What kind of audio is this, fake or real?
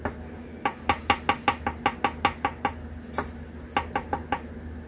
real